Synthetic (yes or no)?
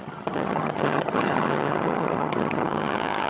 yes